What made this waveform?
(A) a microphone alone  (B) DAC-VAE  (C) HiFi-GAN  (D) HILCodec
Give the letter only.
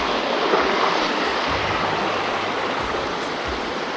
A